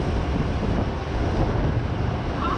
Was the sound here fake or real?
real